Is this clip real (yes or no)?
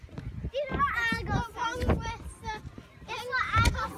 yes